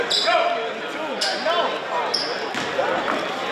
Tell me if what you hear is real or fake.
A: real